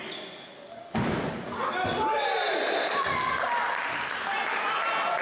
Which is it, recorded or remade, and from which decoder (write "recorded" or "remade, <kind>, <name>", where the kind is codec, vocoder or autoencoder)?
recorded